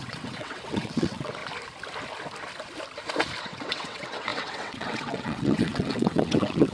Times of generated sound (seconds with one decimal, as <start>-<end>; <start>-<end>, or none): 0.0-1.4; 3.4-6.7